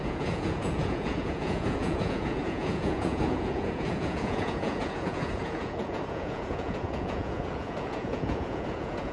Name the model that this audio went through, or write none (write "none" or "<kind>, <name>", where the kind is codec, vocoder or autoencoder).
vocoder, Vocos